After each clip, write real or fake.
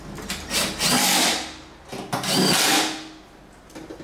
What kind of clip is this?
real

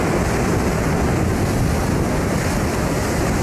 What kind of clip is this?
real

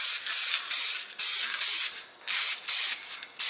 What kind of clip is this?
real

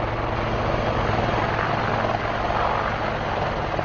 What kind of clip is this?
real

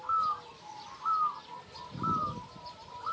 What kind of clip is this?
real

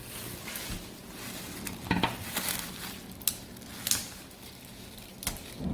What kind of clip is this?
real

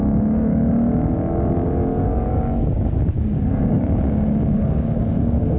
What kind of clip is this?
fake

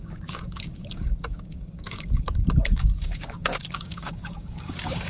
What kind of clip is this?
fake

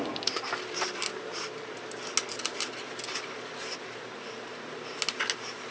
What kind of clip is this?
real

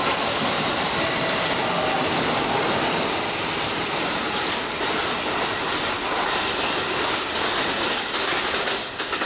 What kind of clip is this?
real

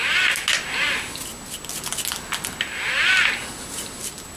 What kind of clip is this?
real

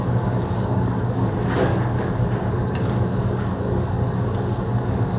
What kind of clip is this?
fake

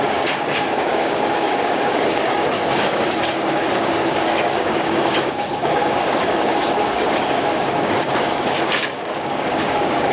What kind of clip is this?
fake